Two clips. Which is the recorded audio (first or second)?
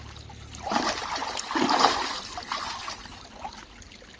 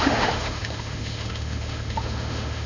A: first